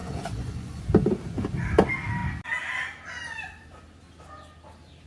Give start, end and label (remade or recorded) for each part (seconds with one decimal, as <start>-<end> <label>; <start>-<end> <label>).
0.0-0.8 remade; 0.8-5.1 recorded